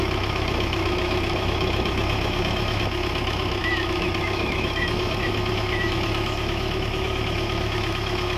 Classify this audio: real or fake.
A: fake